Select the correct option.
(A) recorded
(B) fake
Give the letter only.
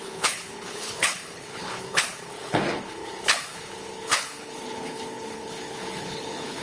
B